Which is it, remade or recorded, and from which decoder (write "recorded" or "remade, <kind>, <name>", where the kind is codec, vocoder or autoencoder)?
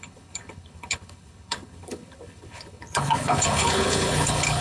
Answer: remade, codec, HILCodec